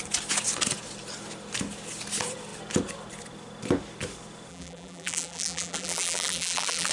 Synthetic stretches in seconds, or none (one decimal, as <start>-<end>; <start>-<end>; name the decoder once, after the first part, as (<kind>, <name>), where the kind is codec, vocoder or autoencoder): 4.5-6.9 (vocoder, BigVGAN v2)